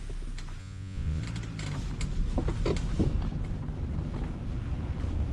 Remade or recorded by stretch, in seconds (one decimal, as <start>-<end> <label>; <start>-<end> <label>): 0.0-0.6 recorded; 0.6-1.2 remade; 1.2-5.3 recorded